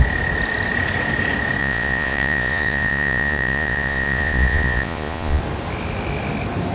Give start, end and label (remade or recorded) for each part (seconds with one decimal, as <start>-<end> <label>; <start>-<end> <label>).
0.0-1.6 recorded; 1.6-5.4 remade; 5.4-6.7 recorded